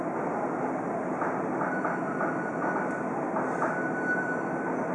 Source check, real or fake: real